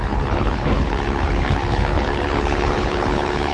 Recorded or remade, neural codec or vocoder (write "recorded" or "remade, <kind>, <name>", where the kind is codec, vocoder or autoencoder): remade, codec, HILCodec